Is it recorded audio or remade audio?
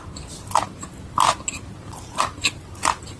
recorded